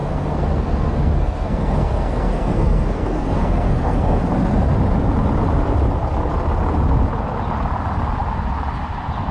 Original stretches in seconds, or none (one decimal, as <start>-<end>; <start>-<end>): 4.2-9.3